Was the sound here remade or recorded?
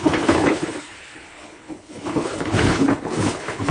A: remade